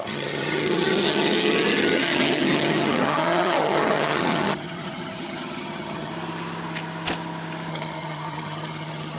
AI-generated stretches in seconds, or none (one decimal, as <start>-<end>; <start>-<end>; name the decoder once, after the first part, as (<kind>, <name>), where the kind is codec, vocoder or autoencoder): 0.0-6.1 (vocoder, HiFi-GAN); 7.7-9.2